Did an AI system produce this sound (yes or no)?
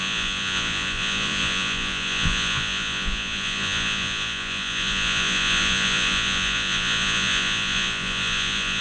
yes